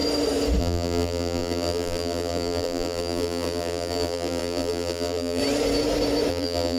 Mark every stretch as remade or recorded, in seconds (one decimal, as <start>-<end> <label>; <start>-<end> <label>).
0.0-0.6 recorded; 0.6-5.4 remade; 5.4-6.3 recorded; 6.3-6.8 remade